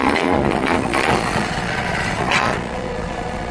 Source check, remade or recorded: remade